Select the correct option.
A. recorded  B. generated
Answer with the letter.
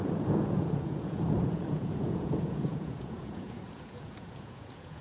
B